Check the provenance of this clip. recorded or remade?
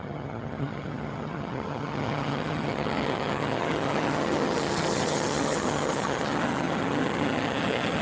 remade